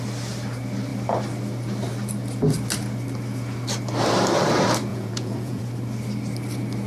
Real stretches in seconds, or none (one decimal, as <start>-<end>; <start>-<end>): 0.0-4.9; 5.6-6.9